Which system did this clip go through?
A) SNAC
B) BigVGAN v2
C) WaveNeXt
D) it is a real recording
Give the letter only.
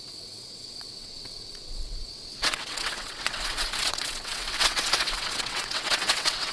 C